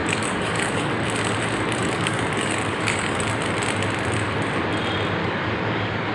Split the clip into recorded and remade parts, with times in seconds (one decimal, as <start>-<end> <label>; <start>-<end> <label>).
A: 0.0-0.9 remade; 0.9-1.8 recorded; 1.8-3.2 remade; 3.2-5.2 recorded; 5.2-6.1 remade